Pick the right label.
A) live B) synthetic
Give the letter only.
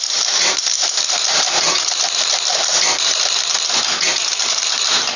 A